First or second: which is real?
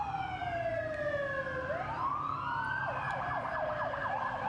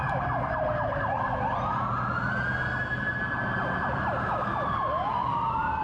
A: second